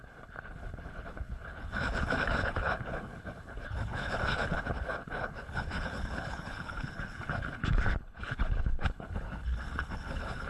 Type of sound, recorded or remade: remade